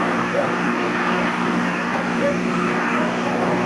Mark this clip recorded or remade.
remade